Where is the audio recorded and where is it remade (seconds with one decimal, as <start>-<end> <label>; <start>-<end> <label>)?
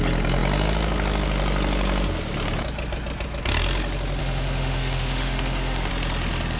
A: 0.0-4.2 recorded; 4.2-5.9 remade; 5.9-6.6 recorded